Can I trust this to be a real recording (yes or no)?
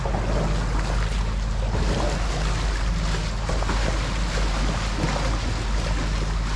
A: yes